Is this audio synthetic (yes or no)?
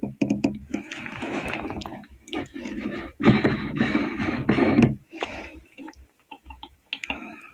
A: yes